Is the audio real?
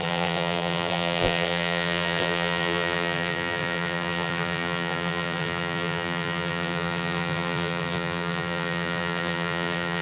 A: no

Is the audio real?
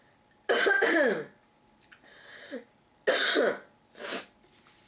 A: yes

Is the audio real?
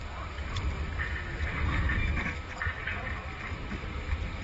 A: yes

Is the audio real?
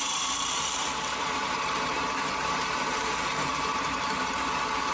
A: no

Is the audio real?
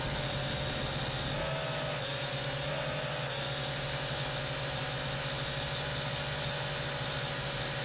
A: yes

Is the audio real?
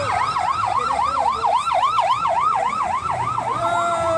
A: no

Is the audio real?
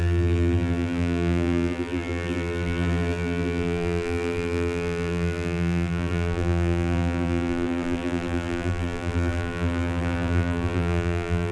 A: no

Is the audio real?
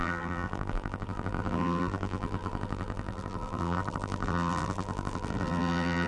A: no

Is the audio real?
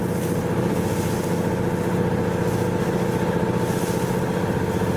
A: yes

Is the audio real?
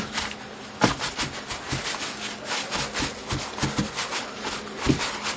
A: yes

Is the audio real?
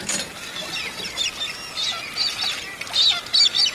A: yes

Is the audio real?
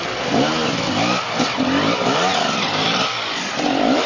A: yes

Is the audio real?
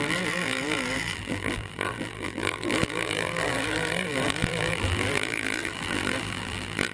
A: no